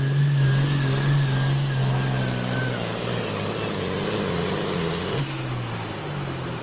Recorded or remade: recorded